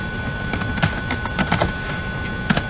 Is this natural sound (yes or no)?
yes